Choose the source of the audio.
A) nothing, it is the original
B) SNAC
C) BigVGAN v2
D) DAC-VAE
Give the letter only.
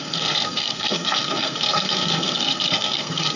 B